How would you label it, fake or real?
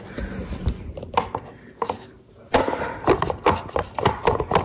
real